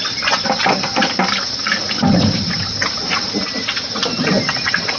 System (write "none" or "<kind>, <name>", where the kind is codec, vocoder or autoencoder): none